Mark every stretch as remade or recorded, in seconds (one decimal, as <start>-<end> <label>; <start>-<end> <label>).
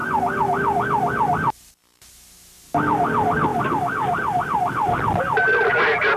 0.0-6.2 recorded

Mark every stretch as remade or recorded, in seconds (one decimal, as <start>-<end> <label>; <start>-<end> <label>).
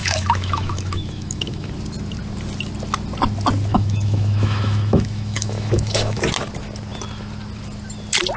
0.0-1.7 remade; 1.7-3.7 recorded; 3.7-6.2 remade; 6.2-8.4 recorded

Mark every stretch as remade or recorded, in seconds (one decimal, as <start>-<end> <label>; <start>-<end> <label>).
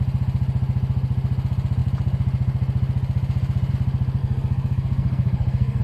0.0-4.2 recorded; 4.2-5.8 remade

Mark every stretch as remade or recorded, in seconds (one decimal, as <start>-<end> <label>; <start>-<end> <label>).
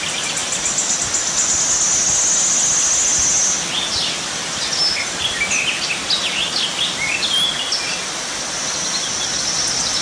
0.0-10.0 recorded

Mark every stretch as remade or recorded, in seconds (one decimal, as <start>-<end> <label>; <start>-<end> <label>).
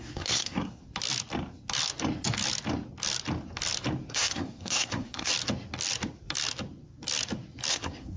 0.0-0.8 remade; 0.8-4.1 recorded; 4.1-5.3 remade; 5.3-7.7 recorded; 7.7-8.2 remade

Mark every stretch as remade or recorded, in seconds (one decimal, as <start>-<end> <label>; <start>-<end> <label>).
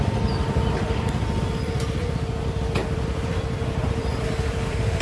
0.0-2.8 recorded; 2.8-3.4 remade; 3.4-4.1 recorded; 4.1-5.0 remade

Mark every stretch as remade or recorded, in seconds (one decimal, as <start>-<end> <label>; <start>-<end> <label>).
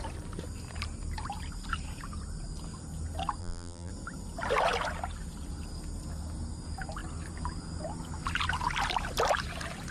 0.0-3.4 recorded; 3.4-3.9 remade; 3.9-9.9 recorded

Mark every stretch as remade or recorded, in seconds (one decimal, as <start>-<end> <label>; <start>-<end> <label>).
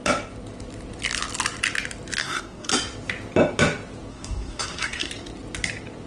0.0-2.2 recorded; 2.2-2.7 remade; 2.7-4.1 recorded; 4.1-5.1 remade; 5.1-6.1 recorded